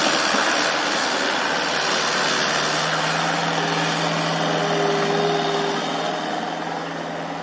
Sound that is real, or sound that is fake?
real